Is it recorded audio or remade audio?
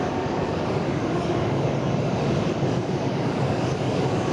remade